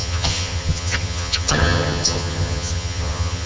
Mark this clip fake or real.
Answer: fake